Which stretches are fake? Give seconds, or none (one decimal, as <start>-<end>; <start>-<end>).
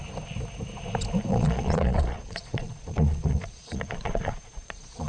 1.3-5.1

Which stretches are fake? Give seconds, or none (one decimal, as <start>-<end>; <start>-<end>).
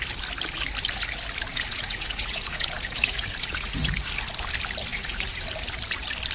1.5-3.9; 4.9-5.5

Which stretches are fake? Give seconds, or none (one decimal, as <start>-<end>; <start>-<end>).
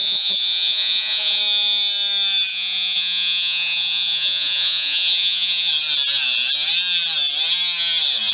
0.0-1.4; 2.5-5.7